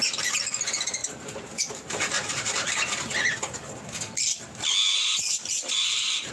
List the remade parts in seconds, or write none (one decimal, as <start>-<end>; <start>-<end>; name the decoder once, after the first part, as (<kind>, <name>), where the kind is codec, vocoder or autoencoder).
1.0-3.1 (vocoder, BigVGAN v2); 5.0-6.3